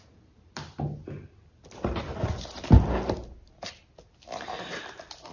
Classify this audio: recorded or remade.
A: recorded